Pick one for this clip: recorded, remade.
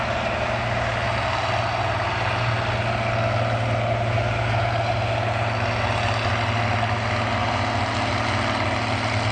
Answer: recorded